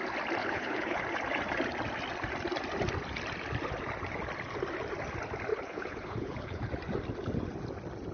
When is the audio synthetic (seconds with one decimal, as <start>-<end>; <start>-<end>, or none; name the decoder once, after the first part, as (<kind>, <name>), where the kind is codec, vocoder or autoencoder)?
0.4-1.0 (codec, HILCodec); 5.5-6.7